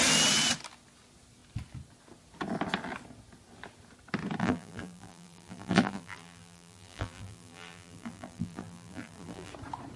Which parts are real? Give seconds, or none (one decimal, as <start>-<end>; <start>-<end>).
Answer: 0.0-4.4; 9.5-10.0